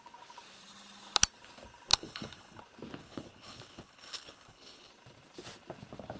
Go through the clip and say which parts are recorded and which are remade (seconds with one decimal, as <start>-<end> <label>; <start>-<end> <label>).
0.0-1.9 recorded; 1.9-2.6 remade; 2.6-3.0 recorded; 3.0-4.9 remade; 4.9-6.2 recorded